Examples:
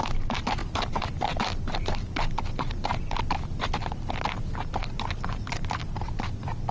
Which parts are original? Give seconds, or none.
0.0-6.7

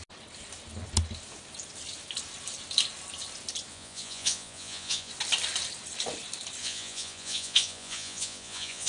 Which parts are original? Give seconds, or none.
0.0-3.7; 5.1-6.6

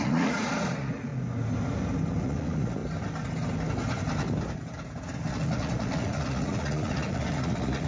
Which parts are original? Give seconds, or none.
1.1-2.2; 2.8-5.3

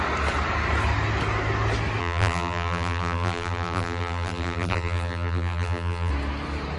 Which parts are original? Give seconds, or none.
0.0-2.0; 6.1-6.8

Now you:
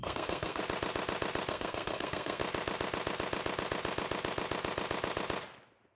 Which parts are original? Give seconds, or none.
0.6-1.5; 2.4-5.9